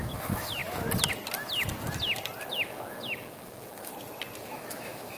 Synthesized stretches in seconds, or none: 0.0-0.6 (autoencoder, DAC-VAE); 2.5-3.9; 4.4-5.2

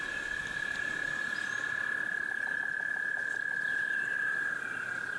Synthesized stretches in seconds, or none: none